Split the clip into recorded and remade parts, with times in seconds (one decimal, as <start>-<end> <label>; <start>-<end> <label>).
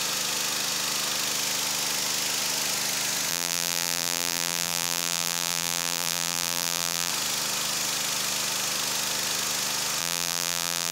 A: 0.0-3.3 recorded; 3.3-7.1 remade; 7.1-10.0 recorded; 10.0-10.9 remade